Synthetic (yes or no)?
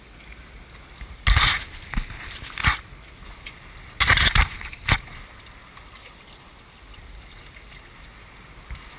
no